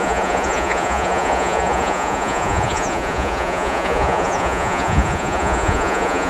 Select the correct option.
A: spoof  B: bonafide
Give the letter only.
A